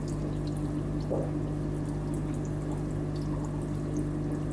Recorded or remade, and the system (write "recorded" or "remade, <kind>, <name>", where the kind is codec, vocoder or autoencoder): recorded